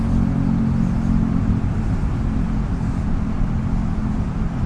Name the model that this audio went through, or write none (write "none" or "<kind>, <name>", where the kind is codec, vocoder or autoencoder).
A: none